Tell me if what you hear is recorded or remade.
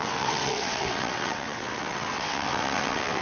remade